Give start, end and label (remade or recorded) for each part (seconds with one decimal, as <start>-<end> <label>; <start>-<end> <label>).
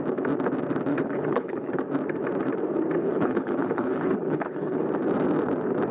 0.0-0.9 recorded; 0.9-1.7 remade; 1.7-3.0 recorded; 3.0-4.8 remade; 4.8-5.9 recorded